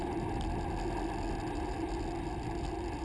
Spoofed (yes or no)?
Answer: no